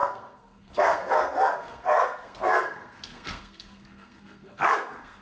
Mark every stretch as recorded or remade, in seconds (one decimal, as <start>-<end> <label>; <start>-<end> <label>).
0.0-5.2 remade